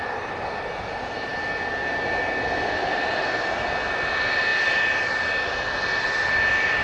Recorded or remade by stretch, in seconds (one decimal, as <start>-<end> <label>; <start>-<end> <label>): 0.0-6.8 recorded